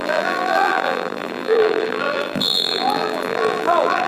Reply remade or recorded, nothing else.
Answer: remade